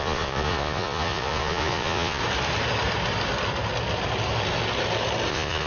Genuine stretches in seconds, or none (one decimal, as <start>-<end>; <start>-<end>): 2.2-5.3